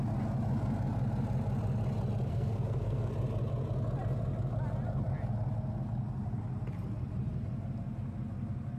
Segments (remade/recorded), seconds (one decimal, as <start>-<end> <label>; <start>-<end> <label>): 0.0-2.3 recorded; 2.3-3.1 remade; 3.1-8.8 recorded